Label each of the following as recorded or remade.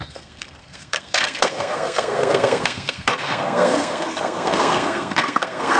remade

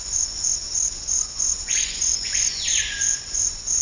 remade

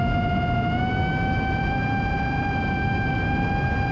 recorded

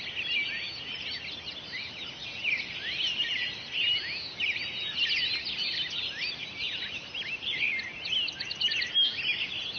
recorded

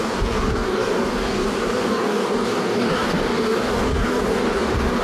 remade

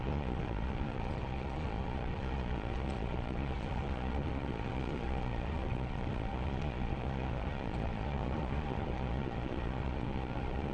remade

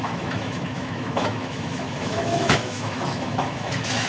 remade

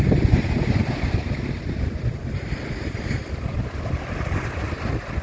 recorded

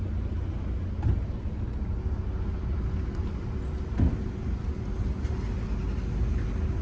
recorded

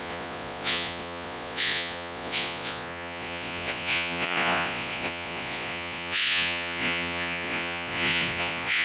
remade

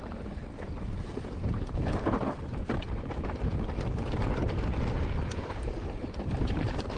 remade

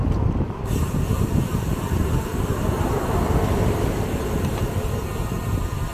recorded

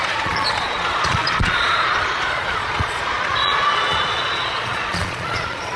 remade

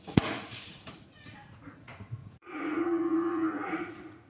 remade